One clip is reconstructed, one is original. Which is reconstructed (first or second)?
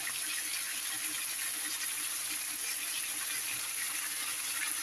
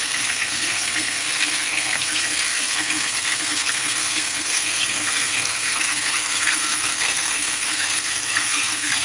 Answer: second